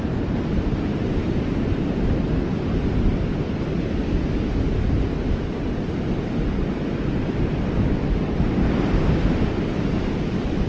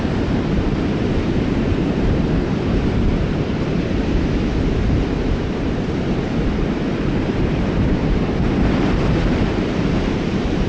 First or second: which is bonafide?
first